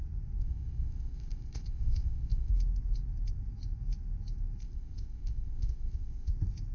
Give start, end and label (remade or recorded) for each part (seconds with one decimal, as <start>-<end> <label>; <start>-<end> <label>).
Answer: 0.0-0.4 recorded; 0.4-2.5 remade; 2.5-4.6 recorded; 4.6-6.3 remade; 6.3-6.7 recorded